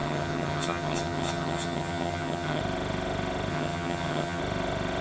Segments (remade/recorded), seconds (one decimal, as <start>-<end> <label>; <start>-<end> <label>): 0.0-2.6 remade; 2.6-3.5 recorded; 3.5-4.4 remade; 4.4-5.0 recorded